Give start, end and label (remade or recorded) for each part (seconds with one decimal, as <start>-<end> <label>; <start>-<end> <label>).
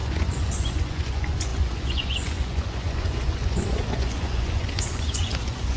0.0-5.8 remade